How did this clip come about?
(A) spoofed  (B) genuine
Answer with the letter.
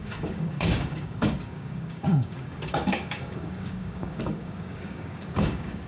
A